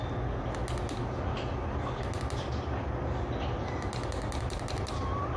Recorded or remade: recorded